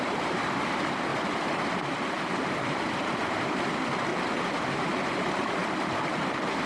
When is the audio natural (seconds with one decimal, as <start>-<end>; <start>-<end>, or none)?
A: 1.1-2.1; 4.1-4.6; 5.6-6.2